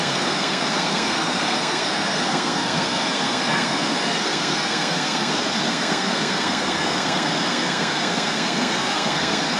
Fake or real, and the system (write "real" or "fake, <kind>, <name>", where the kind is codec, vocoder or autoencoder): fake, codec, SNAC